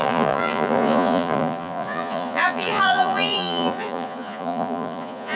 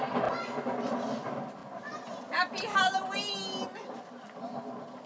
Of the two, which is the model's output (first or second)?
first